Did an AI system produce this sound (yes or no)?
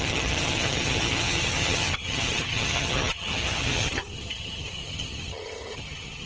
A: yes